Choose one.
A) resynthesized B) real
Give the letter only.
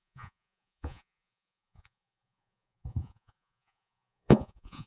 A